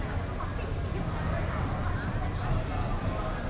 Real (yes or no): yes